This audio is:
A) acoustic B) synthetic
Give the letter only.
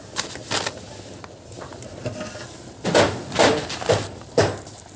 A